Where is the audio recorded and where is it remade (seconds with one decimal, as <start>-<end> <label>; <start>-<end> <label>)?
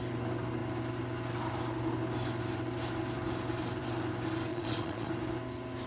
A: 0.0-4.5 recorded; 4.5-5.1 remade; 5.1-5.9 recorded